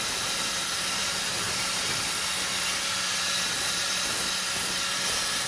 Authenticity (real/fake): real